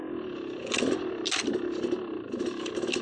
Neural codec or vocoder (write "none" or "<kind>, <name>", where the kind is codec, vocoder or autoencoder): none